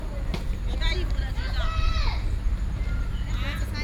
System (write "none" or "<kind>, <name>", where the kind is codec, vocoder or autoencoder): none